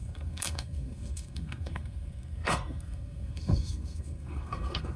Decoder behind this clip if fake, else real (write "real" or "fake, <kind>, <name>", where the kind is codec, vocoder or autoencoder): fake, codec, SNAC